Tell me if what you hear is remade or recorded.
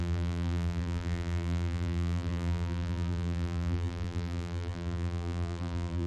remade